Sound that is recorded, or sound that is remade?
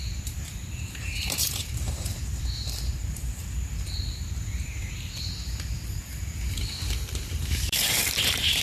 remade